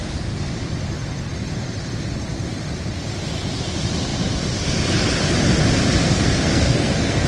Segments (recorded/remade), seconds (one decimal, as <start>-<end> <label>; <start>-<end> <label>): 0.0-6.0 recorded; 6.0-7.3 remade